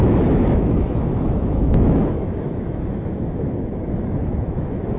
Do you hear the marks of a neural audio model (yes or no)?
yes